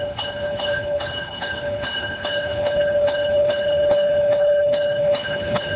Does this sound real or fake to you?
fake